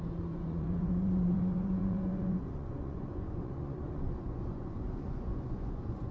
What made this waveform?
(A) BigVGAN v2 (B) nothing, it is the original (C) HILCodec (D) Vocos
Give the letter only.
D